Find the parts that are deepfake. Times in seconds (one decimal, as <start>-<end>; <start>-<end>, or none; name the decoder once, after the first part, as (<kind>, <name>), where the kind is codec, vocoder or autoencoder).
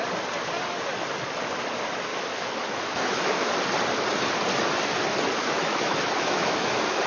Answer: 2.1-3.5 (autoencoder, DAC-VAE); 5.4-7.1